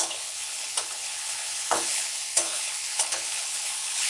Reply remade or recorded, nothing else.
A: remade